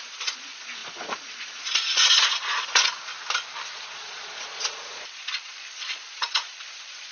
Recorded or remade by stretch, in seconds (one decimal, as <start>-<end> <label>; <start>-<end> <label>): 0.0-3.1 remade; 3.1-3.9 recorded; 3.9-7.1 remade